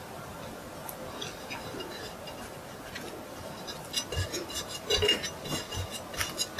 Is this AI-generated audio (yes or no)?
no